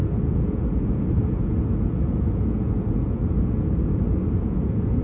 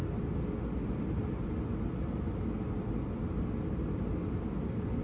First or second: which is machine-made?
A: first